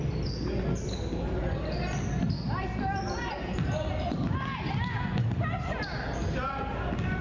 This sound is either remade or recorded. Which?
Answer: recorded